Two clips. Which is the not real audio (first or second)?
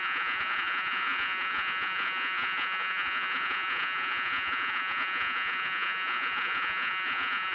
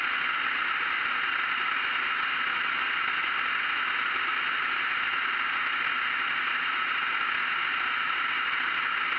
first